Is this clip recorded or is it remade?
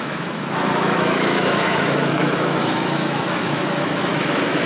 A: remade